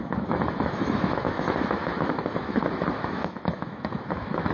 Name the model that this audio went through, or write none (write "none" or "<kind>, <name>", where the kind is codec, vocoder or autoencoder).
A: autoencoder, DAC-VAE